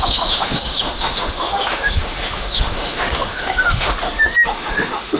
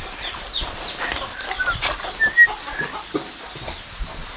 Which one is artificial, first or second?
first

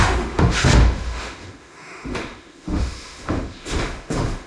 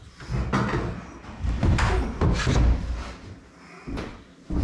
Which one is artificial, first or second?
first